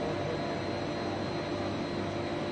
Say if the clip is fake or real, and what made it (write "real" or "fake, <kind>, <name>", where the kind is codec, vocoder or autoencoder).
real